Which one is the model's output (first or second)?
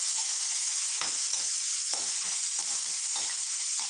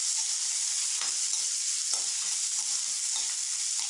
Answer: first